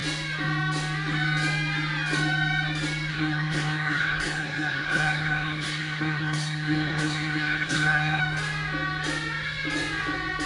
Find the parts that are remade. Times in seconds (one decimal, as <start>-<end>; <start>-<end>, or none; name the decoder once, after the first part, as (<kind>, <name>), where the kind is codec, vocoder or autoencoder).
3.1-8.2 (codec, SNAC)